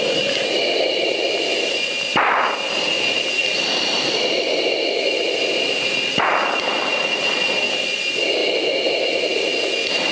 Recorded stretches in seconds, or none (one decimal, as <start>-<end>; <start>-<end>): 0.0-10.1